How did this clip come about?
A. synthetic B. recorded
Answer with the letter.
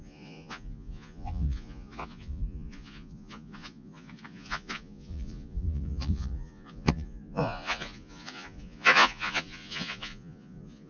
A